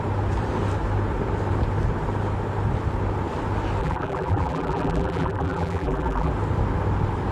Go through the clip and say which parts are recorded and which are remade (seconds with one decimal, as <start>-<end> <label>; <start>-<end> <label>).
0.0-3.8 recorded; 3.8-6.3 remade; 6.3-7.3 recorded